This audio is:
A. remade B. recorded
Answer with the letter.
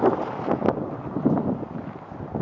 B